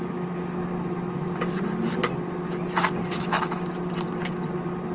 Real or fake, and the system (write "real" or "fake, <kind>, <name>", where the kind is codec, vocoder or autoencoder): real